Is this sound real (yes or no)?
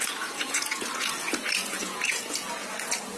no